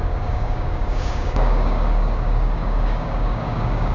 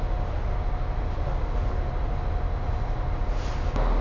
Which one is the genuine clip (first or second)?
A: second